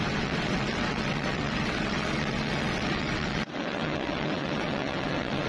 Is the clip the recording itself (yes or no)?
no